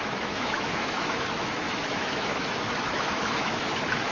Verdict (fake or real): fake